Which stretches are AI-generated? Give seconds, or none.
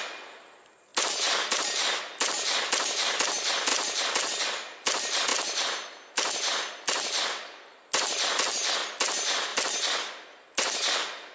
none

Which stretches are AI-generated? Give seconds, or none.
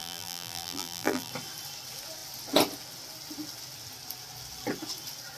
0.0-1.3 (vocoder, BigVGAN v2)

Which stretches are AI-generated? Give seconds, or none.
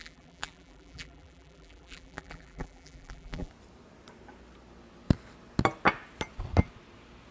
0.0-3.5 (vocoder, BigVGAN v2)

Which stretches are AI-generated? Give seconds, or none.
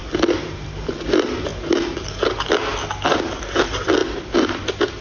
0.0-1.5 (vocoder, BigVGAN v2); 3.2-4.0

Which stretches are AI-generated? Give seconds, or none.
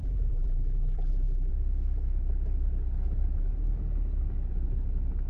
0.0-1.5 (vocoder, BigVGAN v2)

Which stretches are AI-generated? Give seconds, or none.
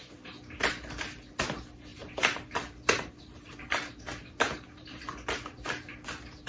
0.0-0.6 (vocoder, BigVGAN v2); 1.9-5.1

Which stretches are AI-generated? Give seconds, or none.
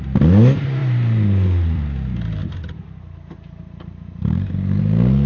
0.8-1.8 (vocoder, BigVGAN v2); 2.4-4.8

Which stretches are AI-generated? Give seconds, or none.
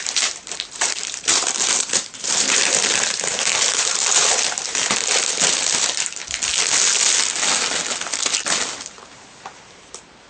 0.0-6.2 (vocoder, BigVGAN v2); 8.7-10.3